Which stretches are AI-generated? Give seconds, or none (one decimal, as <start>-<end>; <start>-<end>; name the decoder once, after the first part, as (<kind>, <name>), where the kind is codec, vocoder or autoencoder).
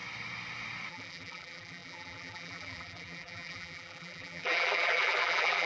0.9-5.7 (vocoder, BigVGAN v2)